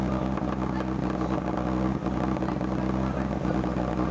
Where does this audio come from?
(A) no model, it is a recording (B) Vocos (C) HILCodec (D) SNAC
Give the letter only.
A